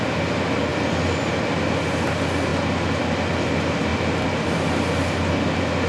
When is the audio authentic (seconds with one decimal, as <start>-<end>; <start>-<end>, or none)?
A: 0.0-5.9